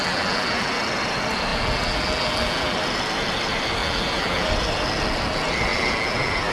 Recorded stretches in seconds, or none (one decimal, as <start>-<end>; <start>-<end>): 0.8-1.5; 2.8-3.8; 4.5-5.7